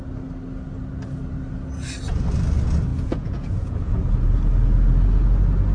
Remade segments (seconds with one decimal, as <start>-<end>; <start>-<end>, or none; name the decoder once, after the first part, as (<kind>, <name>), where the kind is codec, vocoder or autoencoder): 2.9-4.1 (vocoder, Vocos)

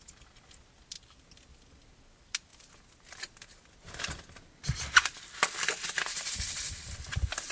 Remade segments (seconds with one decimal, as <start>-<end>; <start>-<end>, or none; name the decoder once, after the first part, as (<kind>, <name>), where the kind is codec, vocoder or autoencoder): none

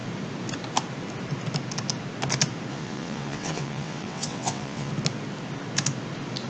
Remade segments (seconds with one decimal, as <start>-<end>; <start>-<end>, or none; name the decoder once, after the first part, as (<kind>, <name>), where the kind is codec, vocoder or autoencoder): 2.7-4.9 (vocoder, WaveNeXt)

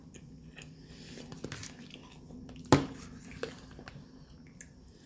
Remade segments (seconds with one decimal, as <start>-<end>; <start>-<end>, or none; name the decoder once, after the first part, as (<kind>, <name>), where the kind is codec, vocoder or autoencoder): none